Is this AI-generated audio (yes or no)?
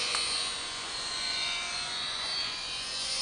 yes